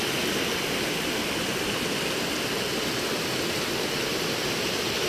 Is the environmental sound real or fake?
real